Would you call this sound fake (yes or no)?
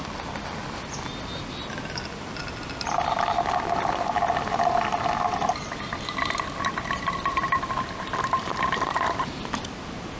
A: no